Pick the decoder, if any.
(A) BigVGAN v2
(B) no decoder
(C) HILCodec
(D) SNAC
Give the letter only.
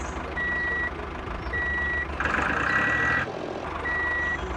B